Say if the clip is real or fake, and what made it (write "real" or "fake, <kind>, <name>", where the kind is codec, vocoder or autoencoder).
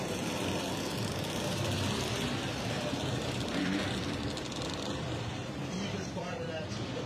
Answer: fake, vocoder, BigVGAN v2